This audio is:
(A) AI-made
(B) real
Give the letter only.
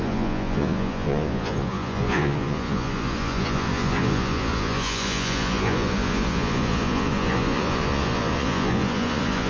A